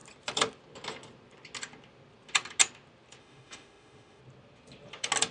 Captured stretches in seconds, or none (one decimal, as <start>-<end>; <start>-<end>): 0.0-3.2; 4.2-5.3